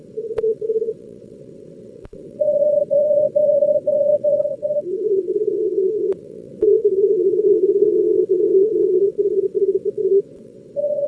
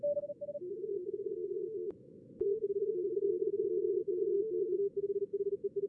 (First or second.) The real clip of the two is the second